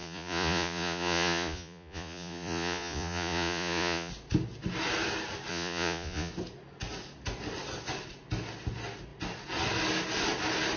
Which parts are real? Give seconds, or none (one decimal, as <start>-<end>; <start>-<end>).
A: 4.1-5.5; 6.3-10.8